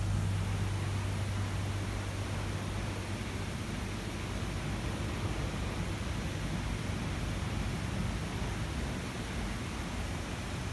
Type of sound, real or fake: real